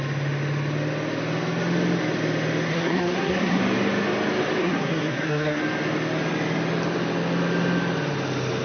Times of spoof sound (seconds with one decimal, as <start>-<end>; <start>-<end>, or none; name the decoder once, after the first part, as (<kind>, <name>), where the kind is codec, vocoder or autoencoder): 2.7-3.6 (codec, SNAC); 4.6-5.6